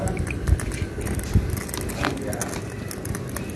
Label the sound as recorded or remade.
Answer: recorded